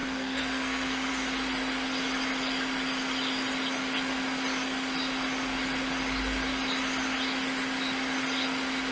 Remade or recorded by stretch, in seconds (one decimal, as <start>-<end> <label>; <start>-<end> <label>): 0.0-1.1 remade; 1.1-8.9 recorded